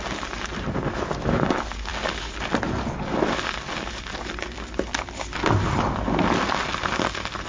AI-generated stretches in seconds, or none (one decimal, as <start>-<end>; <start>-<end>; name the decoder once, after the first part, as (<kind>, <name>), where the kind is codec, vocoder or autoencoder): none